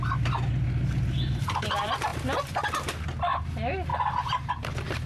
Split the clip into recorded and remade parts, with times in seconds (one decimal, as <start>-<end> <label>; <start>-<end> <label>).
0.0-5.1 recorded